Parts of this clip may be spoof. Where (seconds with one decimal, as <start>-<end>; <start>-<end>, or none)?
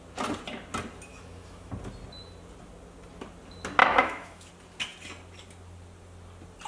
1.1-1.7; 3.8-4.5